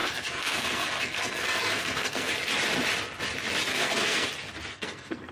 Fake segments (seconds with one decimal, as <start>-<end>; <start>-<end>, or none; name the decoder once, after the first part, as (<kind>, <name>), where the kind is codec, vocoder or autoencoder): 0.0-2.3 (codec, SNAC); 3.7-4.3; 4.7-5.3